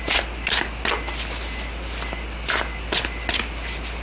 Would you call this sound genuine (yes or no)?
yes